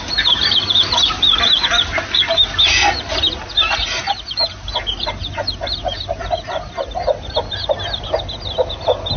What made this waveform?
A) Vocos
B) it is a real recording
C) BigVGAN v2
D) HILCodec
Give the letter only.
B